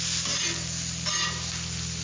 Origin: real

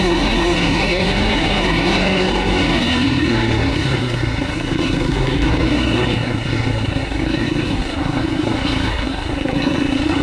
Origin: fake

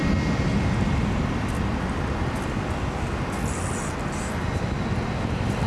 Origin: real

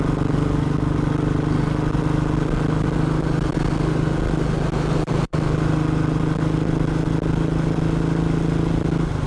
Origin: real